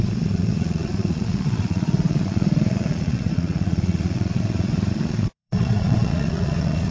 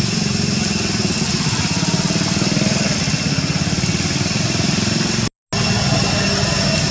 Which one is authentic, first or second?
second